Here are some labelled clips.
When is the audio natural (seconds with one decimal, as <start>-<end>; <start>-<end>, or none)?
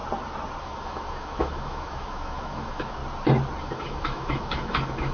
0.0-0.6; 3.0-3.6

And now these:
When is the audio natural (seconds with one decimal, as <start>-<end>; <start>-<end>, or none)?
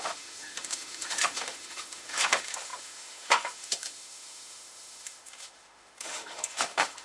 none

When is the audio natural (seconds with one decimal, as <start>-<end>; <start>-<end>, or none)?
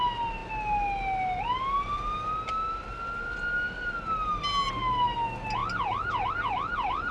0.0-7.1